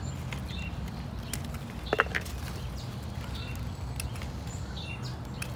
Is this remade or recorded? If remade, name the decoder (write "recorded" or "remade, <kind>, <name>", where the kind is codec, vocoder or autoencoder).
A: recorded